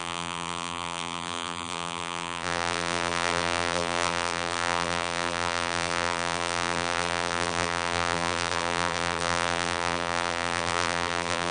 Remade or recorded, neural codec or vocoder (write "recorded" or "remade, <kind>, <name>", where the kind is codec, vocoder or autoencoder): remade, vocoder, BigVGAN v2